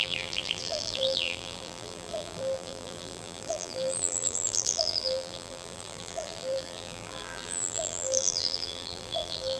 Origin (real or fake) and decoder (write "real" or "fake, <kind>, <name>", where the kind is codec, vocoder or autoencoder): fake, vocoder, BigVGAN v2